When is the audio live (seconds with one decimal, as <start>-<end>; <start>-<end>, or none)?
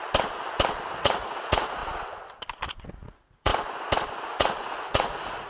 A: 0.0-1.0; 1.8-2.7; 3.5-4.3